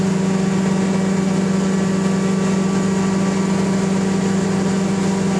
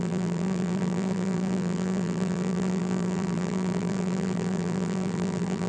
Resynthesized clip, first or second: second